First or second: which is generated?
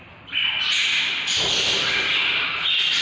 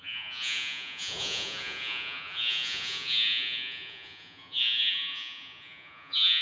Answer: second